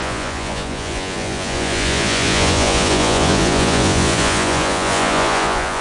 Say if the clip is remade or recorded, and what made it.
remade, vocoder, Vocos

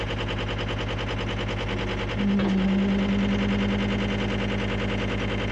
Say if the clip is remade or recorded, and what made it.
recorded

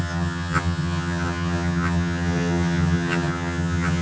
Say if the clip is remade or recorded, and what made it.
remade, vocoder, HiFi-GAN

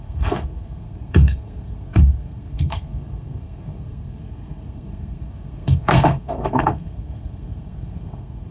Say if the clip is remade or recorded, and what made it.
remade, codec, SNAC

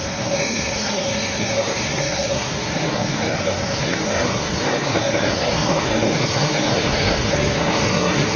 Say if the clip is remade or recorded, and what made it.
remade, codec, SNAC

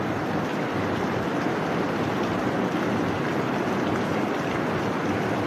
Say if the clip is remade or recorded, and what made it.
recorded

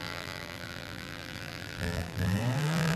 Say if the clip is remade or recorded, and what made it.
remade, vocoder, BigVGAN v2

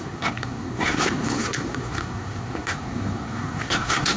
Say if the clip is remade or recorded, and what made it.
remade, codec, SNAC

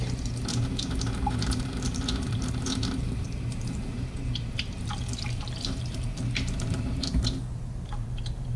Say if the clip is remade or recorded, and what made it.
remade, vocoder, BigVGAN v2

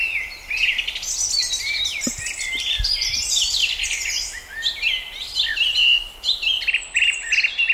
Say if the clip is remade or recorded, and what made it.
recorded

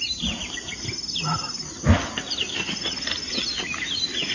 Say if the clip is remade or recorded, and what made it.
recorded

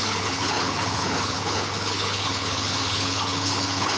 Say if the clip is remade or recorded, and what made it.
remade, codec, HILCodec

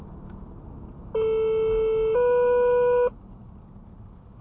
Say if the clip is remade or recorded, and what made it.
recorded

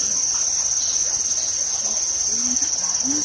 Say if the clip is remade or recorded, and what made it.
recorded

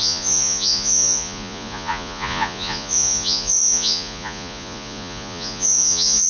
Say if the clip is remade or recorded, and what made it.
remade, vocoder, Vocos